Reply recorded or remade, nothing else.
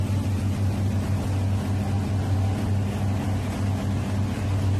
recorded